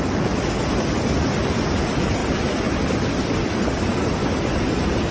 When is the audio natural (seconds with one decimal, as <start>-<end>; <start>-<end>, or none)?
0.0-5.1